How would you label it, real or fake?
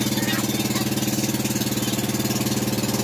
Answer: real